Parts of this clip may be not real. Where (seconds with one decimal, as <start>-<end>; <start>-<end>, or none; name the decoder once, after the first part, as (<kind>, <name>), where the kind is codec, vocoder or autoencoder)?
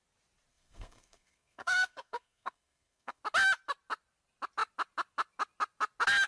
0.5-3.2 (codec, SNAC)